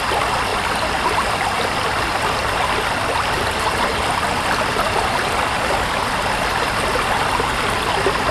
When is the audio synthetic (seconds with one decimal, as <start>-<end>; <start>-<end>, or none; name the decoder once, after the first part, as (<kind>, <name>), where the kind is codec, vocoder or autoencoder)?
none